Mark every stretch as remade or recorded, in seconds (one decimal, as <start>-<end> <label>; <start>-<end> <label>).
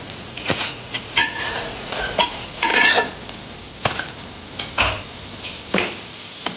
0.0-2.7 remade; 2.7-6.6 recorded